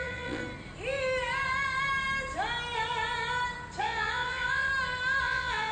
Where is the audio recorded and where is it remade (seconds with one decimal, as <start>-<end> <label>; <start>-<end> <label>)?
0.0-0.4 remade; 0.4-3.8 recorded; 3.8-4.7 remade; 4.7-5.2 recorded; 5.2-5.7 remade